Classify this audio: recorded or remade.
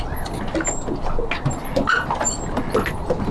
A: recorded